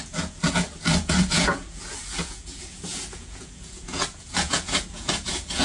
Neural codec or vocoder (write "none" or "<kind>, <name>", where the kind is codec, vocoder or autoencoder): vocoder, Vocos